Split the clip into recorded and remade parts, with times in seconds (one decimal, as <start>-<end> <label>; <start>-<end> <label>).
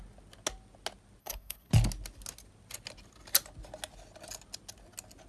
0.0-1.2 recorded; 1.2-1.7 remade; 1.7-5.3 recorded